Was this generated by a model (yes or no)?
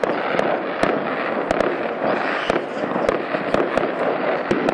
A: no